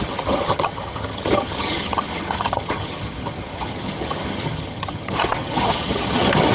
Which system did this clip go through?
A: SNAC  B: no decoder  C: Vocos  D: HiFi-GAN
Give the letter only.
D